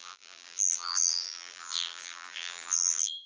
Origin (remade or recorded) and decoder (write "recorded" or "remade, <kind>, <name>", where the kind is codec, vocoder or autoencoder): remade, vocoder, BigVGAN v2